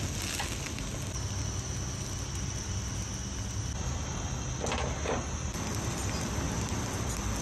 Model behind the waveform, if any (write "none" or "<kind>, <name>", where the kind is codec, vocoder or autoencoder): none